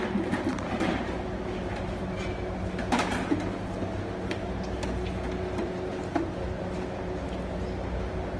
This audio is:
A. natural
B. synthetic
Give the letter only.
A